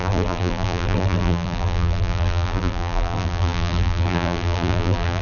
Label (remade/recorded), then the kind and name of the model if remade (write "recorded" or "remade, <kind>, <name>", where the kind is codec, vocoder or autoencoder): remade, vocoder, BigVGAN v2